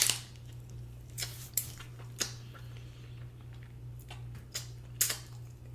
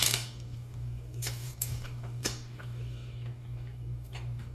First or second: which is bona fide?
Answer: first